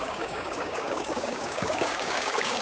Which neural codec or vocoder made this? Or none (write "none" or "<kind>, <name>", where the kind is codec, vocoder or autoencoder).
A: codec, DAC